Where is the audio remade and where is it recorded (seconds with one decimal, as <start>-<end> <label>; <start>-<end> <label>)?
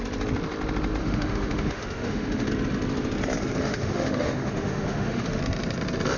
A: 0.0-1.0 recorded; 1.0-2.5 remade; 2.5-3.6 recorded; 3.6-5.4 remade; 5.4-6.2 recorded